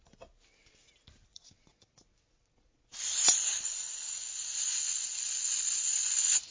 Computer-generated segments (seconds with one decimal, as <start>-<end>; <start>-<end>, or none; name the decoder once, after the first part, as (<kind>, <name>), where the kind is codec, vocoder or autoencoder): 1.3-4.0 (vocoder, Vocos)